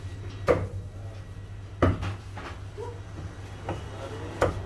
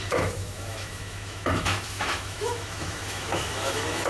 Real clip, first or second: first